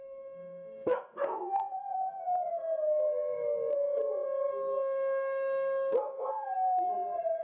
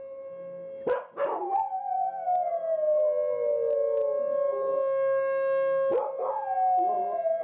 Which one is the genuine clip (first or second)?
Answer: second